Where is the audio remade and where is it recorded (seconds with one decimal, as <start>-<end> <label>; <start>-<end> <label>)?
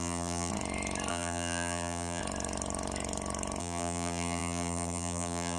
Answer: 0.0-0.5 remade; 0.5-1.1 recorded; 1.1-2.2 remade; 2.2-3.6 recorded; 3.6-5.6 remade